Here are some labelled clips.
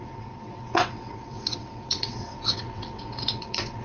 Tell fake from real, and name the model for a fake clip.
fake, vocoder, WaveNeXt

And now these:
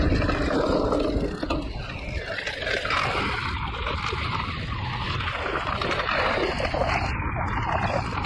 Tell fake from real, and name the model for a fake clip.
real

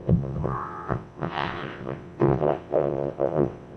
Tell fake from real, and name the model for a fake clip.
fake, vocoder, WaveNeXt